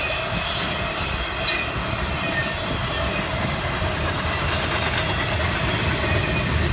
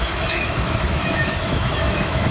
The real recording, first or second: first